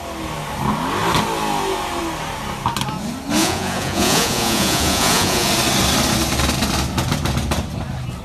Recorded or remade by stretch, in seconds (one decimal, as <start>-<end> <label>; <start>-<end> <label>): 0.0-3.4 recorded; 3.4-5.5 remade; 5.5-8.2 recorded